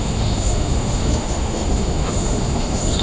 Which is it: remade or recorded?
remade